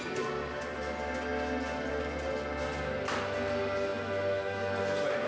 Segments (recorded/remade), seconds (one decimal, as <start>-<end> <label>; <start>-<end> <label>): 0.0-5.3 recorded